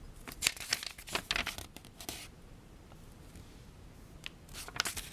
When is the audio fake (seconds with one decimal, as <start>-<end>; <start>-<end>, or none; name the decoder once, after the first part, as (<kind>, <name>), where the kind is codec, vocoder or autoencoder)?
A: none